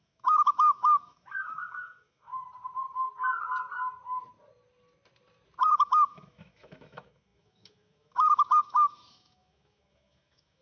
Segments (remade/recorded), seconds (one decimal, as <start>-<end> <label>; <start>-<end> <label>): 0.0-2.3 remade; 2.3-5.7 recorded; 5.7-10.6 remade